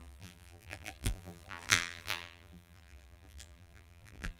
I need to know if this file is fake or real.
fake